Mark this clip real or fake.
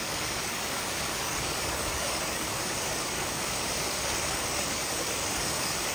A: fake